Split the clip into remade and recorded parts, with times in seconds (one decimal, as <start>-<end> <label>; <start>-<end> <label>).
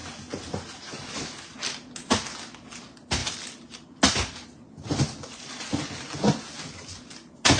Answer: 0.0-3.2 recorded; 3.2-4.7 remade; 4.7-7.6 recorded